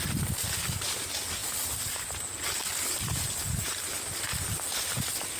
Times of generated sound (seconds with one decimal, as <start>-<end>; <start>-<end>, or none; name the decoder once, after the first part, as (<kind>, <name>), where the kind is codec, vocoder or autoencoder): none